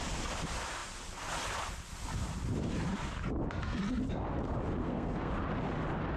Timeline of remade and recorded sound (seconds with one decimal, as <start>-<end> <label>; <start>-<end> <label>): 0.0-4.8 recorded; 4.8-5.3 remade; 5.3-6.2 recorded